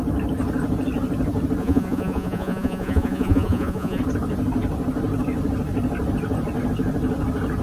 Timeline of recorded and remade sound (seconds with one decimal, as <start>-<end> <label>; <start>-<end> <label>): 0.0-1.6 recorded; 1.6-4.0 remade; 4.0-7.6 recorded